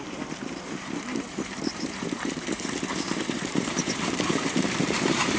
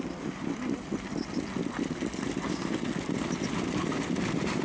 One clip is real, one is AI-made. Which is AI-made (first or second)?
first